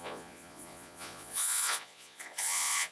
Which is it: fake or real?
fake